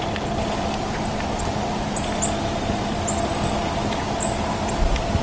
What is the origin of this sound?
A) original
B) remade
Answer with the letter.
A